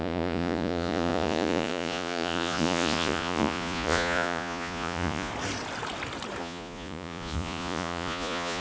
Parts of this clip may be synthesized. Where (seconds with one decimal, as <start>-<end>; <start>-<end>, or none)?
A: 0.0-5.3; 6.4-8.6